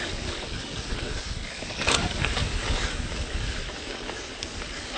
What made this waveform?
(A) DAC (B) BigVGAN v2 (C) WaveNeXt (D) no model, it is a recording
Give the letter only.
A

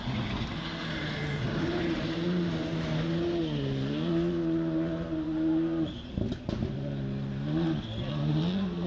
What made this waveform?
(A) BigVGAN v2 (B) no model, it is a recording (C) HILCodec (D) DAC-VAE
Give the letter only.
B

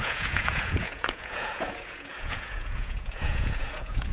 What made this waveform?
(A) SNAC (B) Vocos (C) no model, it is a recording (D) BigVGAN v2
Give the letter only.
B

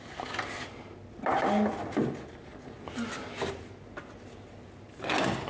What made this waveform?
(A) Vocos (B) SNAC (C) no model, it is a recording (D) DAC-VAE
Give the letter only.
C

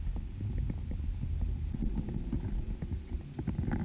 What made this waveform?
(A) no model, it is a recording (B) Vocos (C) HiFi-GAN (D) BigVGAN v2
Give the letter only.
A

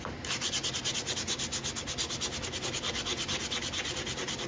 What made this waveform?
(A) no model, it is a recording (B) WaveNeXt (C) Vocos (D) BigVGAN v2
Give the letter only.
A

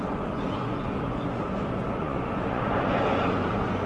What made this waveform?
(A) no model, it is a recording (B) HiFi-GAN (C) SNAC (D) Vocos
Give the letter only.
D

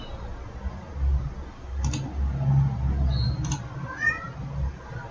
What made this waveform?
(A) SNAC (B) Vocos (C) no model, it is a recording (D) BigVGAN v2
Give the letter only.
C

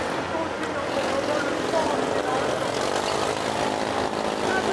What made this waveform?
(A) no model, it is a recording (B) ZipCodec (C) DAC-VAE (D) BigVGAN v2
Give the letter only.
A